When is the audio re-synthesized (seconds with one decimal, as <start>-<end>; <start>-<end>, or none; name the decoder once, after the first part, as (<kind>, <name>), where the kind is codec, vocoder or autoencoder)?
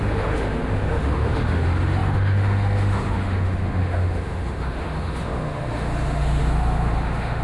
0.0-7.4 (autoencoder, DAC-VAE)